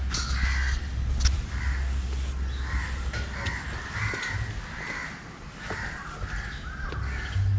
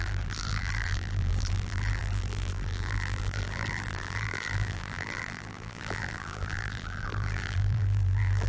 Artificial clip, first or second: second